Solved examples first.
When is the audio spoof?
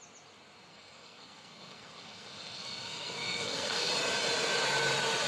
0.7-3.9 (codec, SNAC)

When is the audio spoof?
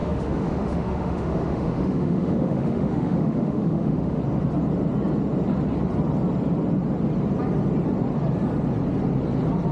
0.0-4.2 (autoencoder, DAC-VAE)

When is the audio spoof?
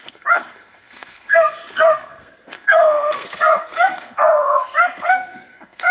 0.0-5.9 (codec, SNAC)